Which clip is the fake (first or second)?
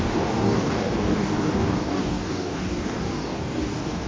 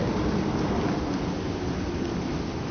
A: first